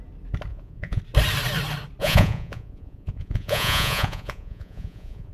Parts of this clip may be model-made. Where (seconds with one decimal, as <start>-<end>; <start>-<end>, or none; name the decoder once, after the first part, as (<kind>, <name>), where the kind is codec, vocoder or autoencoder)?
0.5-1.0 (vocoder, Vocos); 2.0-5.3